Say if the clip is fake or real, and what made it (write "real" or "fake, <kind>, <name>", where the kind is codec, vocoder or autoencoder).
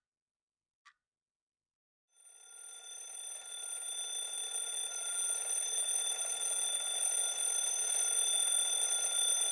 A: real